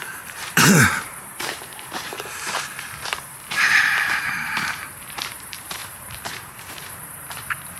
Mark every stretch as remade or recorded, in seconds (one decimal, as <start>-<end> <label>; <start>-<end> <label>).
0.0-7.8 remade